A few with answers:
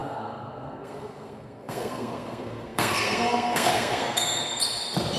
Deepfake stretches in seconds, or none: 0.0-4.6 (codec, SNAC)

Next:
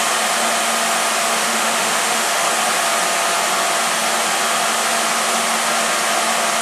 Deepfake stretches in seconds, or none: 1.4-2.5 (autoencoder, DAC-VAE)

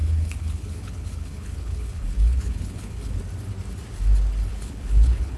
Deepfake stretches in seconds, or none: 0.0-3.2 (codec, HILCodec); 4.5-5.4

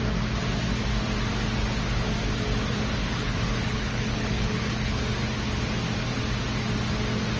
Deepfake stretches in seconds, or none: 3.0-5.0 (codec, HILCodec)

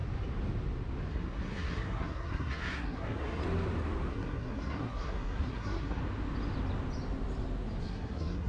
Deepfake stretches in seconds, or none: 1.1-3.4 (codec, SNAC); 4.1-6.0; 7.8-8.5